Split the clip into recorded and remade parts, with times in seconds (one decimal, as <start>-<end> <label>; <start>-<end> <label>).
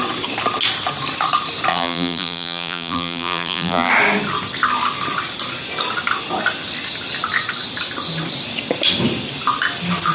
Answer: 0.0-1.7 recorded; 1.7-3.9 remade; 3.9-10.1 recorded